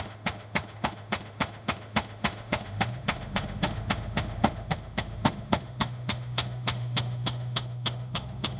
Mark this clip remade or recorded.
remade